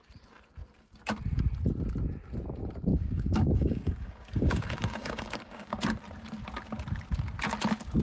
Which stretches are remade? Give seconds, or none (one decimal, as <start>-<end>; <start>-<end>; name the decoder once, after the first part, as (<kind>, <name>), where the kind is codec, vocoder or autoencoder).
2.9-5.8 (codec, DAC)